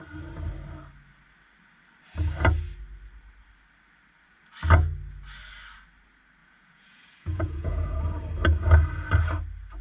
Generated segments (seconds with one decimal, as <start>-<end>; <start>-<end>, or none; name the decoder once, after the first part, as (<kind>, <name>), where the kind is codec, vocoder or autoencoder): 6.4-8.0 (vocoder, Vocos)